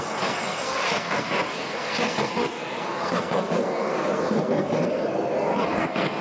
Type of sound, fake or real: fake